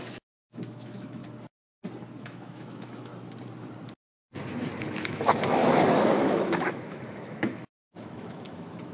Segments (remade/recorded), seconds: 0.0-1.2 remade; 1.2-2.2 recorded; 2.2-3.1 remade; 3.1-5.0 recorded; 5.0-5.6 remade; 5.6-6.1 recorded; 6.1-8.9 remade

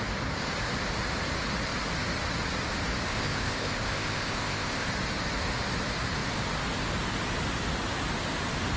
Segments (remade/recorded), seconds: 0.0-3.1 recorded; 3.1-4.9 remade; 4.9-8.8 recorded

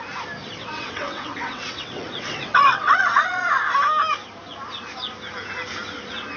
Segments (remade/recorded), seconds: 0.0-0.6 recorded; 0.6-3.5 remade; 3.5-6.4 recorded